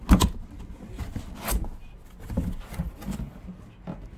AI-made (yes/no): no